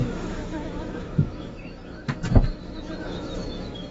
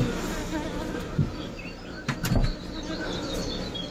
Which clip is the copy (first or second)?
first